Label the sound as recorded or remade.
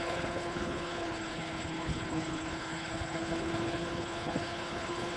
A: remade